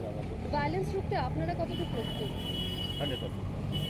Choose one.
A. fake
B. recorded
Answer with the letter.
B